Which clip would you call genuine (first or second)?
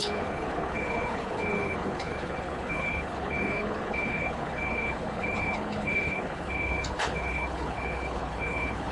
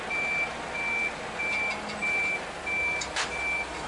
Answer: second